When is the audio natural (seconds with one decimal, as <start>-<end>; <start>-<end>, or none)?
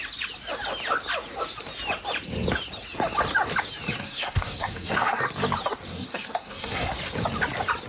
0.0-4.0; 5.2-5.9; 6.9-7.9